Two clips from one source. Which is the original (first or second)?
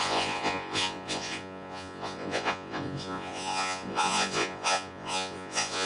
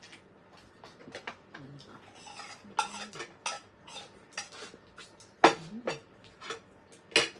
second